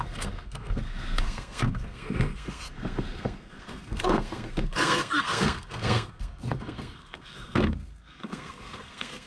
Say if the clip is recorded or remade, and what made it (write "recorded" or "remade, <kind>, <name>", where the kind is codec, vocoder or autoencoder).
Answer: remade, codec, SNAC